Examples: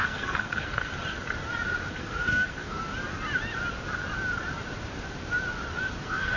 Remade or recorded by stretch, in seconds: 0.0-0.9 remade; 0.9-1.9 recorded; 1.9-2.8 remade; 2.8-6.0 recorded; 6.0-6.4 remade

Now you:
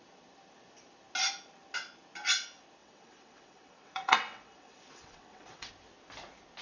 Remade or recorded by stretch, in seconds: 0.0-2.8 recorded; 2.8-5.7 remade; 5.7-6.6 recorded

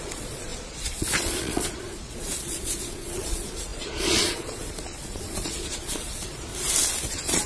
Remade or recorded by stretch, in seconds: 0.0-6.5 remade; 6.5-7.1 recorded; 7.1-7.5 remade

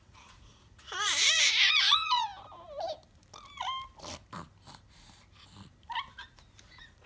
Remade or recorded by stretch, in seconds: 0.0-2.3 remade; 2.3-6.6 recorded; 6.6-7.1 remade

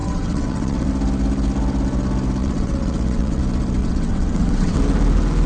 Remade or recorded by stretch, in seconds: 0.0-0.9 remade; 0.9-2.4 recorded; 2.4-3.4 remade; 3.4-3.8 recorded; 3.8-4.8 remade; 4.8-5.5 recorded

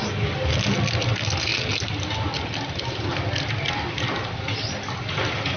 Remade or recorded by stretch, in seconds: 0.0-0.6 remade; 0.6-5.6 recorded

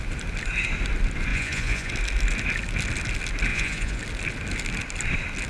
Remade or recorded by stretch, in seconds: 0.0-1.3 recorded; 1.3-1.9 remade; 1.9-3.5 recorded; 3.5-4.0 remade; 4.0-5.5 recorded